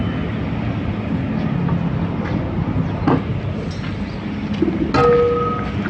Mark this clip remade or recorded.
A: recorded